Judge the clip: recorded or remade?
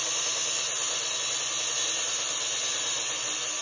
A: recorded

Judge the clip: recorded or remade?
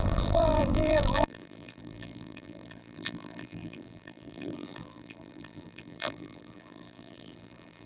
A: remade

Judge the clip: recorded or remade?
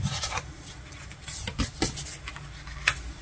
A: recorded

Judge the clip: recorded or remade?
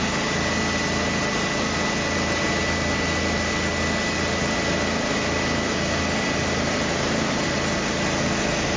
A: recorded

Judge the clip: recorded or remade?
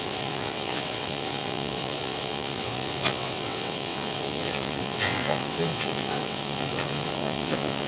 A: remade